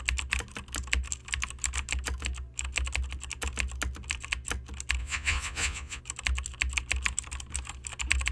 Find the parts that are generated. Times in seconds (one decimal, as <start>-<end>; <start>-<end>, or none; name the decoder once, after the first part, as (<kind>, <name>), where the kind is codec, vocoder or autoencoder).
5.0-6.0 (vocoder, Vocos)